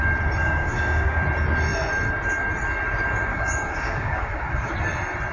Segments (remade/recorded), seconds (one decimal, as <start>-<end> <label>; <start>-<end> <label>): 0.0-0.4 recorded; 0.4-1.2 remade; 1.2-3.3 recorded; 3.3-4.7 remade; 4.7-5.3 recorded